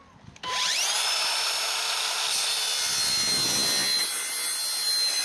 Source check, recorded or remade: recorded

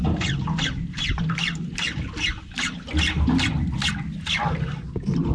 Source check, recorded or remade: recorded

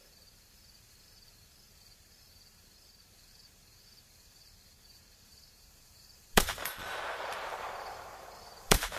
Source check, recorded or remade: remade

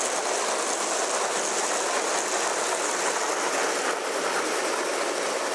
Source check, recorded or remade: recorded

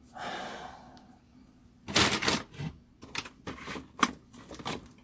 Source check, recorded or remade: recorded